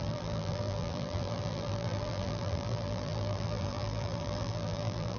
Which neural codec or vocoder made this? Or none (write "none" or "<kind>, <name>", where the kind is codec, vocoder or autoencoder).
vocoder, BigVGAN v2